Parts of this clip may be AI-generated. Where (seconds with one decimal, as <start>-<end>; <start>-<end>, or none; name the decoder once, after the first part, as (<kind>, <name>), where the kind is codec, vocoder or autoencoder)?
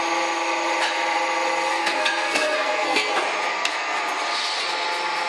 1.7-3.1 (codec, SNAC); 3.5-4.0